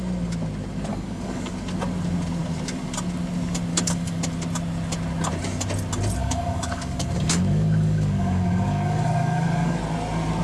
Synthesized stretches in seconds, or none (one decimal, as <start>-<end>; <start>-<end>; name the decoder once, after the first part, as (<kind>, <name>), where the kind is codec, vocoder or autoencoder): 0.9-1.5 (codec, DAC); 3.7-4.2; 6.2-9.8